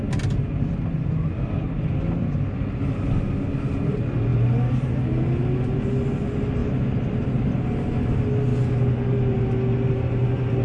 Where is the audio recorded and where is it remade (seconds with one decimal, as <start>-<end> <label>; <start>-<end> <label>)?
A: 0.0-10.6 recorded